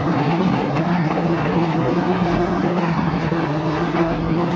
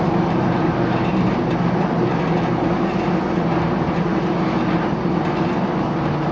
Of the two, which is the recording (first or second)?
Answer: second